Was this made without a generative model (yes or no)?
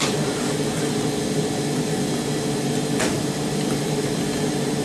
no